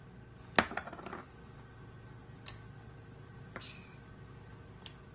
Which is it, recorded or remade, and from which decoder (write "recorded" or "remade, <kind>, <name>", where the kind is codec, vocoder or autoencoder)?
recorded